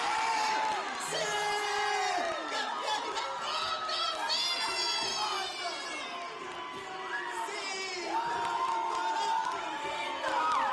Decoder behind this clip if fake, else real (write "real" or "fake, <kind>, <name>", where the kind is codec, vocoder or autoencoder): real